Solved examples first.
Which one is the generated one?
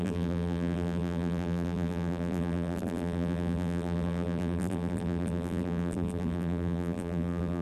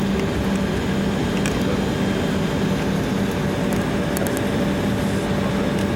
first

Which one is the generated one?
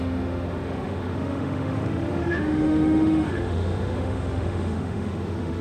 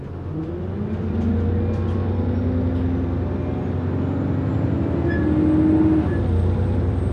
first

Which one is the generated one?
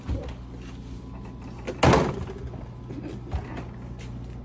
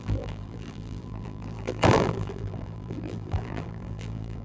second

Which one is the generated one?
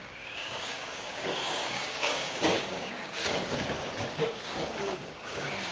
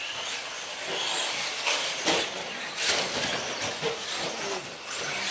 first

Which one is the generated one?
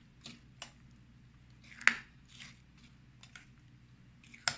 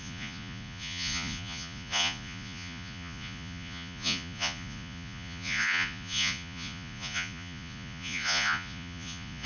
second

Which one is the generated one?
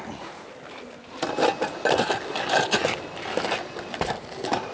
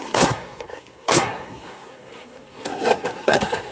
second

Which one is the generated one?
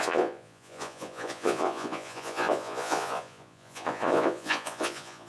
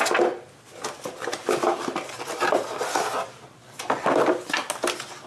first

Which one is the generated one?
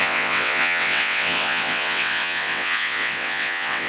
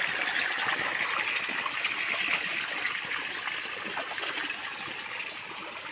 first